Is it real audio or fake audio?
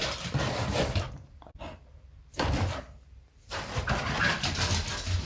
fake